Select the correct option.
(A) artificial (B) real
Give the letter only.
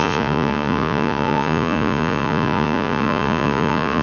A